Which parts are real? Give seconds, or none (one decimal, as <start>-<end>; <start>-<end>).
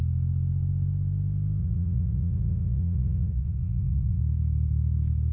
0.0-1.6; 4.2-5.3